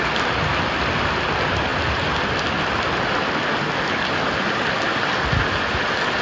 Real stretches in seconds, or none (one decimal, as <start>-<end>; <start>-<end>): 0.0-6.2